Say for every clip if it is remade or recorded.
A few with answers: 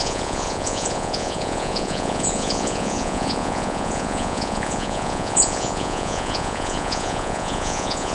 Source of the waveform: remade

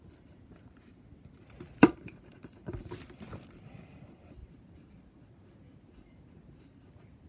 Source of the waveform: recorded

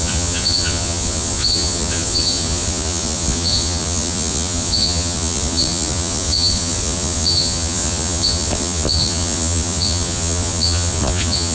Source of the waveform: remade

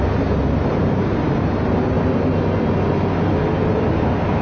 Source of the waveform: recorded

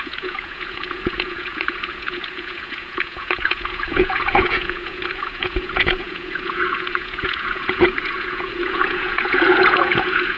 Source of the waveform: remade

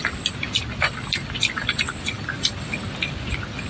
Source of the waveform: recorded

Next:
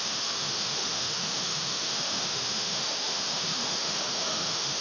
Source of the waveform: remade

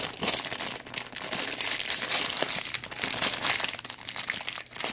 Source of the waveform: recorded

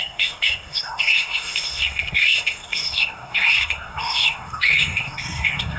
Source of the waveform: remade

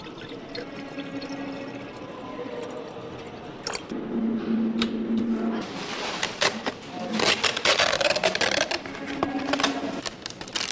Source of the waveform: recorded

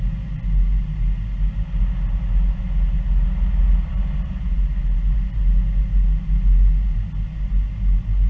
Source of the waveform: recorded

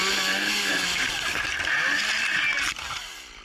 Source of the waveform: recorded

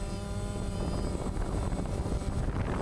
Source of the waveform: recorded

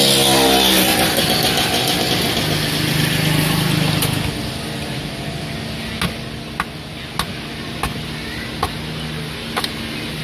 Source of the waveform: recorded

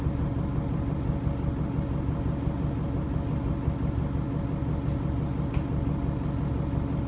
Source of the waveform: recorded